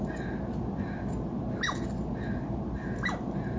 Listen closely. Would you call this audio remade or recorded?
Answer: recorded